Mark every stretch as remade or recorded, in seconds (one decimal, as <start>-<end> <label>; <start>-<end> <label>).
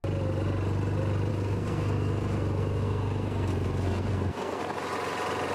0.0-1.3 recorded; 1.3-4.6 remade; 4.6-5.5 recorded